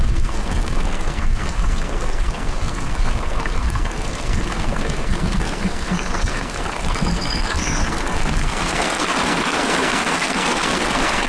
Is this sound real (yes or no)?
no